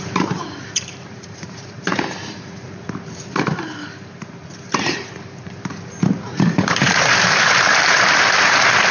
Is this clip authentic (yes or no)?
no